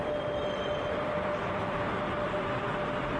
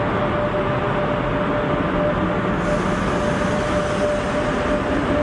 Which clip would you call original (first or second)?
second